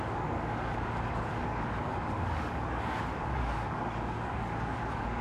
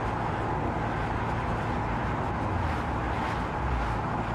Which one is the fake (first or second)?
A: first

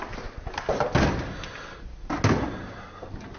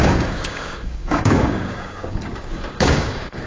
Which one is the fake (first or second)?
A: second